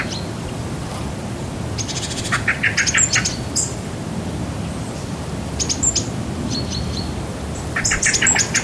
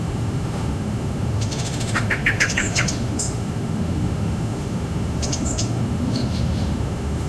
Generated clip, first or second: second